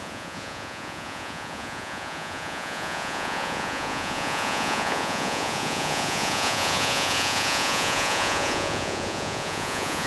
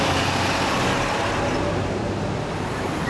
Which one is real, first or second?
second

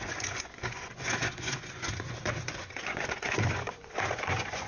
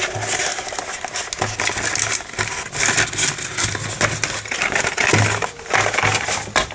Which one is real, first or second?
second